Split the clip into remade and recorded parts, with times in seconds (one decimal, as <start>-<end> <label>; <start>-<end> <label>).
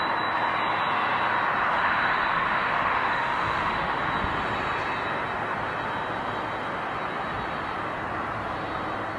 0.0-1.6 recorded; 1.6-4.0 remade; 4.0-9.2 recorded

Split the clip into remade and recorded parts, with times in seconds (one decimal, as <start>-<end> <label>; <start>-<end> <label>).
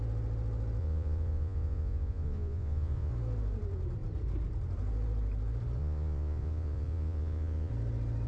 0.0-0.8 recorded; 0.8-3.1 remade; 3.1-5.8 recorded; 5.8-7.7 remade; 7.7-8.3 recorded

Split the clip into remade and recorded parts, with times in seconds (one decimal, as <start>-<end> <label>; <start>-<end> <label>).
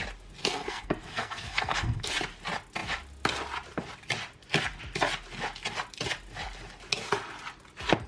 0.0-0.4 recorded; 0.4-2.1 remade; 2.1-8.1 recorded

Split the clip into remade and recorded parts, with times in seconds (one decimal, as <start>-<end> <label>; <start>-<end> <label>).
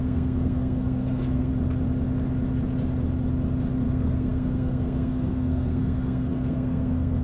0.0-1.5 remade; 1.5-3.9 recorded; 3.9-7.2 remade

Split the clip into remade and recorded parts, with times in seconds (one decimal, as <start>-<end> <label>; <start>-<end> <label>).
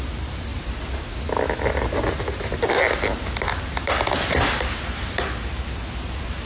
0.0-6.5 recorded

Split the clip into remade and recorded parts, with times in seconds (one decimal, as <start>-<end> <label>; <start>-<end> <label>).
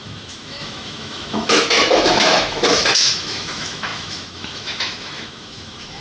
0.0-6.0 remade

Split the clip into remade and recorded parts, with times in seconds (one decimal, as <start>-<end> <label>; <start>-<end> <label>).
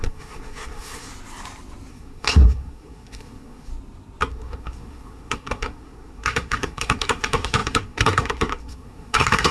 0.0-1.1 remade; 1.1-1.9 recorded; 1.9-3.7 remade; 3.7-4.3 recorded; 4.3-9.5 remade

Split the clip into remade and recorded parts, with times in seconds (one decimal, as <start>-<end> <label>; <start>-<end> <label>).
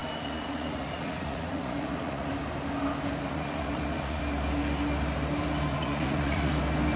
0.0-2.3 remade; 2.3-3.3 recorded; 3.3-4.2 remade; 4.2-5.7 recorded; 5.7-6.5 remade; 6.5-7.0 recorded